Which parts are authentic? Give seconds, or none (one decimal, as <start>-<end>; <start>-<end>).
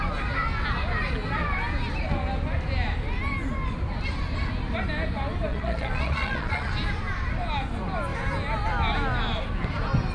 0.0-5.5; 6.7-10.1